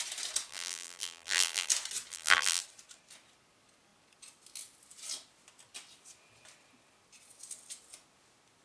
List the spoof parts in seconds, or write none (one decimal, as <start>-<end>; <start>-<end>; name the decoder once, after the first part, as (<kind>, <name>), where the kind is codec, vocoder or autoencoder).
0.5-1.7 (vocoder, BigVGAN v2); 2.1-2.6